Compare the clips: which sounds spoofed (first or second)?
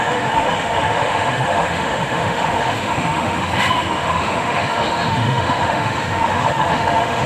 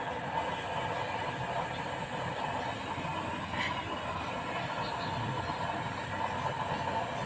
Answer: first